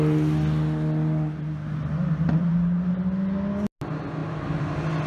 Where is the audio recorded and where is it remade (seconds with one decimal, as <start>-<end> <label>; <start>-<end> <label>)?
0.0-5.1 recorded